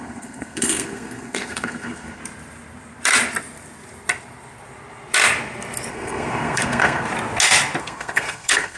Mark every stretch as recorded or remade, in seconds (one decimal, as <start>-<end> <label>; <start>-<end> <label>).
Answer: 0.0-2.2 remade; 2.2-5.9 recorded; 5.9-7.1 remade; 7.1-7.8 recorded; 7.8-8.8 remade